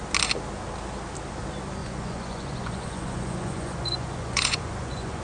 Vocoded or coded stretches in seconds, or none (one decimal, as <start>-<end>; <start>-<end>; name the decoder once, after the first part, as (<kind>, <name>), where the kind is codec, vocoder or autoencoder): 1.8-5.2 (vocoder, Vocos)